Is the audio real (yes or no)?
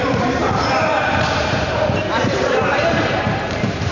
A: no